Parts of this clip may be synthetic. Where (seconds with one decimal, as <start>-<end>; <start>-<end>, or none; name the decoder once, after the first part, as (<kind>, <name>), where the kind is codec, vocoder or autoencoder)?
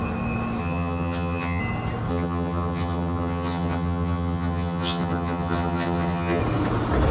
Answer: 0.6-1.6 (vocoder, HiFi-GAN); 2.1-6.4